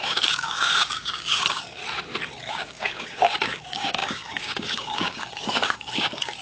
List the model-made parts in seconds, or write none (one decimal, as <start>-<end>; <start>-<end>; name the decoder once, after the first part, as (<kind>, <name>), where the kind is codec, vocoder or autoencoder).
0.0-1.8 (codec, DAC); 2.5-6.4